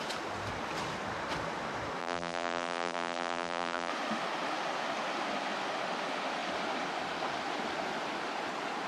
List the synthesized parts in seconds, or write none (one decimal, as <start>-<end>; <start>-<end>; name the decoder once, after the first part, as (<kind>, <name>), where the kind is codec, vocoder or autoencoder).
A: 2.0-3.9 (vocoder, BigVGAN v2)

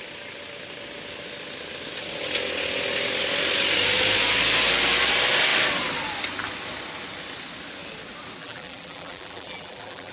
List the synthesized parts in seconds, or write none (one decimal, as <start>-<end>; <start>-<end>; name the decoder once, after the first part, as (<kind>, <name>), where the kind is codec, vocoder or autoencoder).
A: 8.4-10.1 (vocoder, BigVGAN v2)

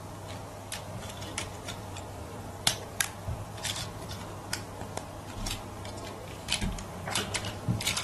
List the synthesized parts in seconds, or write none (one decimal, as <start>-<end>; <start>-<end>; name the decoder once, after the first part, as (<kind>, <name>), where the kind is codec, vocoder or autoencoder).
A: 1.4-4.2 (vocoder, BigVGAN v2); 6.2-7.5

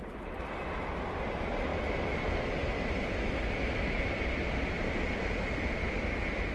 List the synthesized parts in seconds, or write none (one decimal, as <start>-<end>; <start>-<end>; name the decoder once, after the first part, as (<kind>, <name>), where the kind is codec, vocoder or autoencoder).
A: none